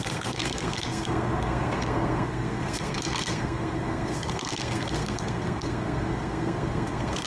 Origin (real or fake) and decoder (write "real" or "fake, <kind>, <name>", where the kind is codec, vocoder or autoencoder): fake, codec, SNAC